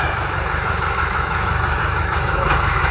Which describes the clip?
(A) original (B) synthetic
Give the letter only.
B